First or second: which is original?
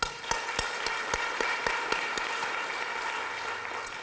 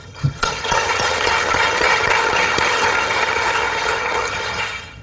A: first